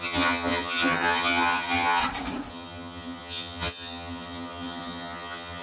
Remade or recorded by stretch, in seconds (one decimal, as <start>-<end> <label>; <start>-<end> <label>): 0.0-2.0 remade; 2.0-2.5 recorded; 2.5-5.6 remade